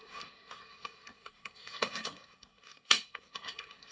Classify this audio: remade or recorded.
remade